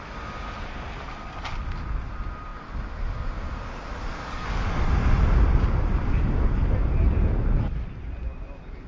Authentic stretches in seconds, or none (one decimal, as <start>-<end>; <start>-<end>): 0.0-8.9